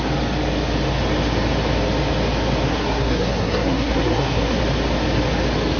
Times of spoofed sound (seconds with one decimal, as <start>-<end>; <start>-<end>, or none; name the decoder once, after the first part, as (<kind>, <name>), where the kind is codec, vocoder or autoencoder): 2.7-4.6 (codec, SNAC)